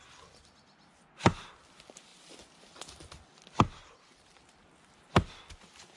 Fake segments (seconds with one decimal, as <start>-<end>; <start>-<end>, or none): none